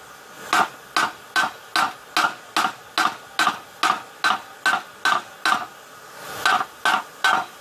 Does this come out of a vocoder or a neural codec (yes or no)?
no